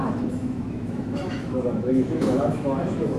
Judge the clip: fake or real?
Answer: fake